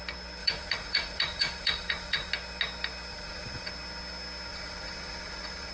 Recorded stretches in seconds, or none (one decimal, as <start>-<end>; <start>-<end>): 0.0-0.4; 2.3-3.1; 3.7-4.5